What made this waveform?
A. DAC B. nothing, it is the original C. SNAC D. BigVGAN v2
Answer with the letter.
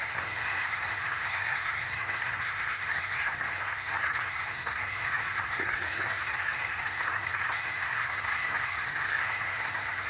C